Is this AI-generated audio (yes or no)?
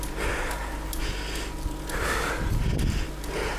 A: no